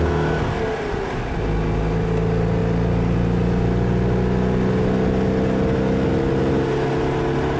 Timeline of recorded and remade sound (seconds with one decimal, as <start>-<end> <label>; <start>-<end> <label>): 0.0-7.6 recorded